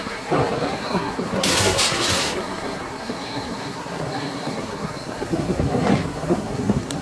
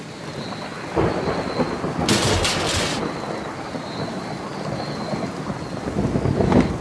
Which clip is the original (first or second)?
second